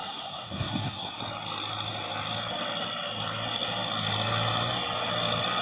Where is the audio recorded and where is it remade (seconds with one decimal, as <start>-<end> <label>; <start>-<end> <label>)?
0.0-1.2 remade; 1.2-5.6 recorded